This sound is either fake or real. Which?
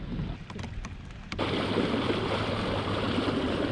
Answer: fake